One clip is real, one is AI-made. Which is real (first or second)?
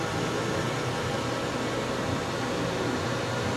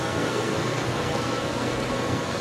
first